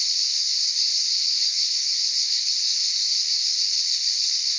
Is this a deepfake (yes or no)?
yes